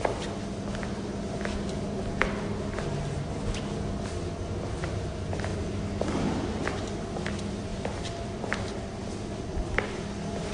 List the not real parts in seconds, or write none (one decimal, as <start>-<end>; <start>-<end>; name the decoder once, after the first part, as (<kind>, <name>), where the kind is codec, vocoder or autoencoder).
5.5-6.6 (vocoder, BigVGAN v2); 7.7-8.8